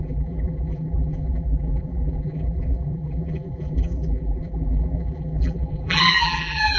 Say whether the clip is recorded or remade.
remade